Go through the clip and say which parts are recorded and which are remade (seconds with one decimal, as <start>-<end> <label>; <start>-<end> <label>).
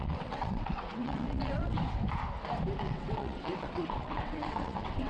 0.0-1.8 remade; 1.8-2.8 recorded; 2.8-5.1 remade